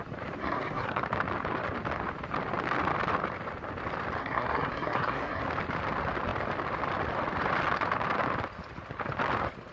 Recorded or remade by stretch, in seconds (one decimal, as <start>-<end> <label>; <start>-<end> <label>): 0.0-0.4 recorded; 0.4-1.0 remade; 1.0-4.2 recorded; 4.2-5.4 remade; 5.4-9.7 recorded